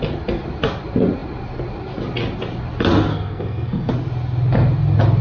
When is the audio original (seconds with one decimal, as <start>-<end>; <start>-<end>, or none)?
0.0-3.1; 3.9-5.2